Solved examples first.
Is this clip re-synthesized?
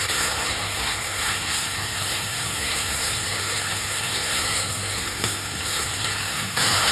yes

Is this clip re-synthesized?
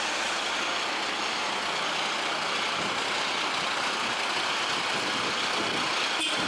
no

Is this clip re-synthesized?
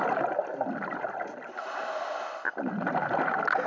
no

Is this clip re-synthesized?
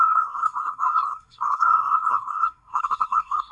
yes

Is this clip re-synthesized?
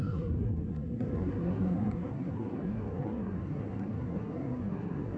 yes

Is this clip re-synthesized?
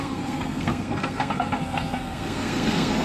yes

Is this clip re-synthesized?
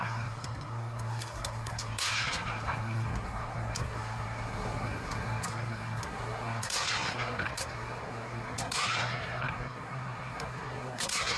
yes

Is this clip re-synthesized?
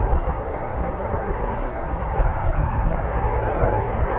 yes